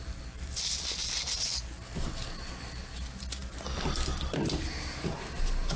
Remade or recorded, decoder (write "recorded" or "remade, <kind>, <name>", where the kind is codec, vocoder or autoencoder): recorded